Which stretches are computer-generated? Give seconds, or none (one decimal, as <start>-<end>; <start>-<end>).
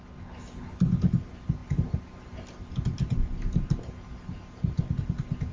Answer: none